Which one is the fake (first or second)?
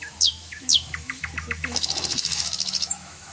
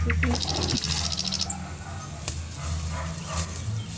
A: first